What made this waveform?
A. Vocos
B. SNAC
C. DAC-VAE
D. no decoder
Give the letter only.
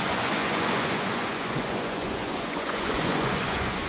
A